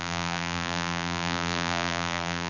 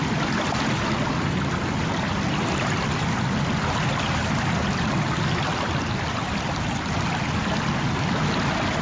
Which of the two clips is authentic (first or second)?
second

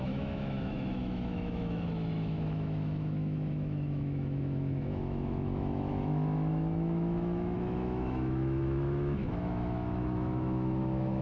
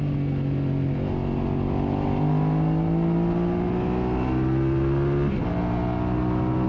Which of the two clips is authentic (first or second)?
second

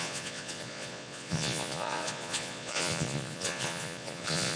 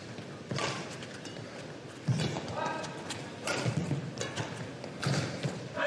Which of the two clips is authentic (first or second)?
second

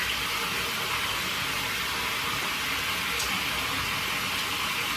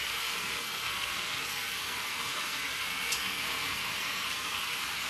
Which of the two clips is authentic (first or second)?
first